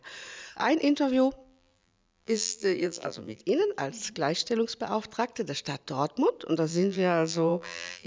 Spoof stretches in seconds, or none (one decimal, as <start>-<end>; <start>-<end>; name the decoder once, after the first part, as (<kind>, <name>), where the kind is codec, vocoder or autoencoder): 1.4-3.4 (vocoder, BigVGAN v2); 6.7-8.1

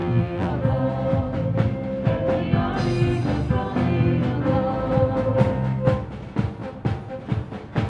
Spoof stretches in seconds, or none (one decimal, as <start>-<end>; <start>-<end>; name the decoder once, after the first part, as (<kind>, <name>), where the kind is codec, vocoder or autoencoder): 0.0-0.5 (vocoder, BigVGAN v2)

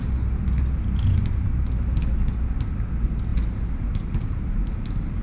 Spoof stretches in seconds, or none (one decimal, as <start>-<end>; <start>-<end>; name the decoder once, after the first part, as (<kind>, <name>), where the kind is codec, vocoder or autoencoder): 3.3-4.6 (vocoder, BigVGAN v2)

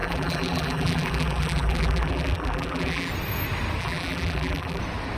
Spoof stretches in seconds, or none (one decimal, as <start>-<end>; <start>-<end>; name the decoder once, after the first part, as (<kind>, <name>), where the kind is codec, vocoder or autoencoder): 0.0-3.1 (vocoder, BigVGAN v2); 3.8-4.8

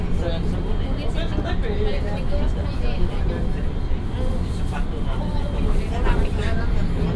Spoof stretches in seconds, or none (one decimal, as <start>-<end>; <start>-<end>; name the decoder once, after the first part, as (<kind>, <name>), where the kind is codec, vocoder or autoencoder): none

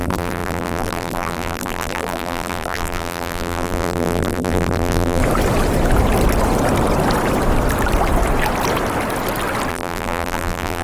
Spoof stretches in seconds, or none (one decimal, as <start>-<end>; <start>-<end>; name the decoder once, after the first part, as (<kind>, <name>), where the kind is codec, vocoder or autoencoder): 0.0-5.2 (vocoder, BigVGAN v2); 9.7-10.8

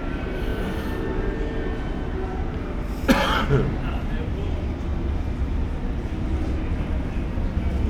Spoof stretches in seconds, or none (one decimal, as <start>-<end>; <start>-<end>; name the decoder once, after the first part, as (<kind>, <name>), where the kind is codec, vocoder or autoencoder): 0.0-0.5 (vocoder, BigVGAN v2); 3.9-4.9

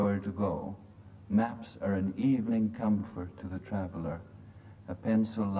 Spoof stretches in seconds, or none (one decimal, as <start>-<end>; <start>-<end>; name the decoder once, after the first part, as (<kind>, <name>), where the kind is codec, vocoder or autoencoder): 2.5-3.0 (vocoder, BigVGAN v2)